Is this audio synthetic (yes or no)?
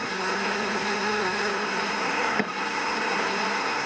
yes